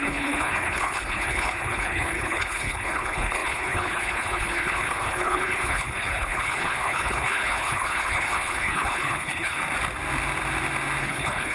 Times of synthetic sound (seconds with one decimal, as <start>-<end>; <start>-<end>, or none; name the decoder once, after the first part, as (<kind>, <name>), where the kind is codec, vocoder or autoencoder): 0.0-9.6 (codec, HILCodec); 11.0-11.5